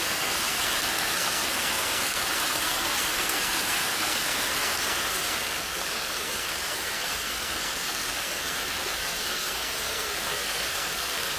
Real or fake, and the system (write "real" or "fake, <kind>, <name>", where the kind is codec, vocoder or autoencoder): fake, codec, SNAC